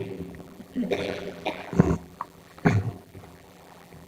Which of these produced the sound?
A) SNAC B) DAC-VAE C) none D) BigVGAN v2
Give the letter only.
D